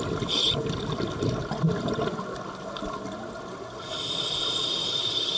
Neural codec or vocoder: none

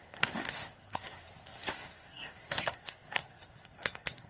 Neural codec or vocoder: codec, SNAC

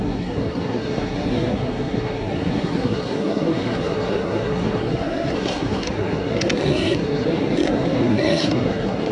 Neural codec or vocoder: codec, SNAC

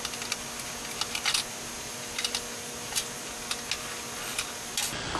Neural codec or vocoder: none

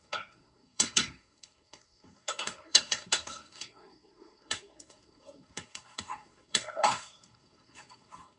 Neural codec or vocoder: codec, SNAC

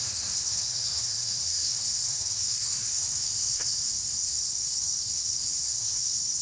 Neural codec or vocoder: codec, SNAC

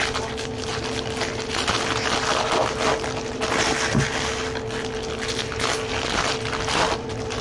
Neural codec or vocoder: none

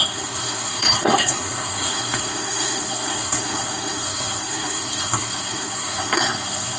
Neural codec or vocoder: codec, SNAC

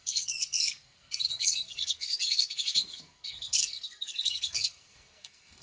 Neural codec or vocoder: codec, SNAC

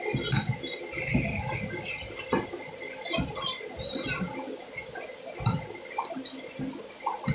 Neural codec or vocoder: none